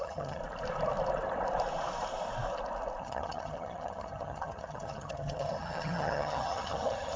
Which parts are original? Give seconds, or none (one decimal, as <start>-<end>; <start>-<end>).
0.4-3.0